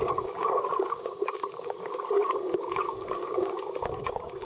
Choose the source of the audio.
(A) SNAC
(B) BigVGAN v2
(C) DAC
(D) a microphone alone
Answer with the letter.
C